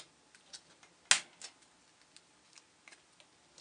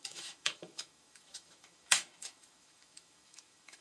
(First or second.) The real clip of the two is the first